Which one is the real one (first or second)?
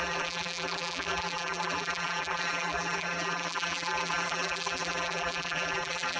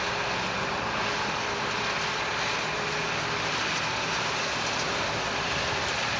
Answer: second